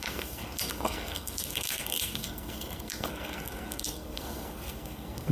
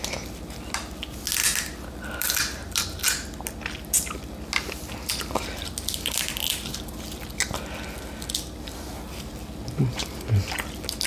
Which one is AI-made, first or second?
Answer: first